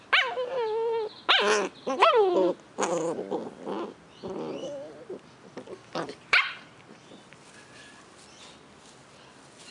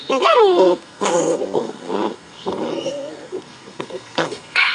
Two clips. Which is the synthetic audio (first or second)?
second